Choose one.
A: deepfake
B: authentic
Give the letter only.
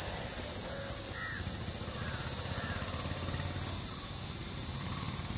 B